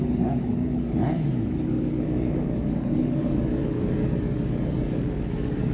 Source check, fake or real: fake